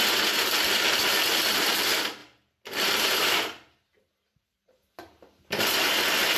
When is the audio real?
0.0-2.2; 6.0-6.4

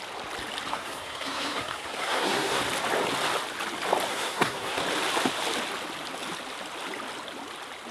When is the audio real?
0.0-0.7; 2.6-4.1; 4.8-7.9

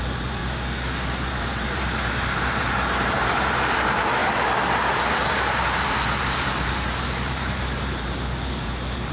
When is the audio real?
0.4-1.3; 4.2-5.3

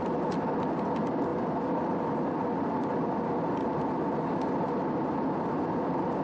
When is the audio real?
0.0-6.2

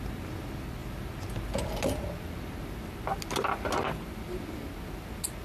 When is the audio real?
0.0-5.4

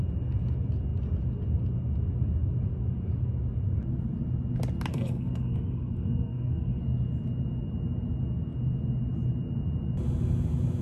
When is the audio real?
0.0-4.9; 6.8-10.8

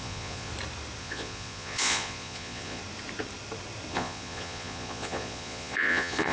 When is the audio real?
0.5-1.0; 2.8-3.9